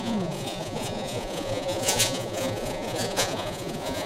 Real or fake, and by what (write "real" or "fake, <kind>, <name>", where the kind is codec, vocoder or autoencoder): fake, vocoder, Vocos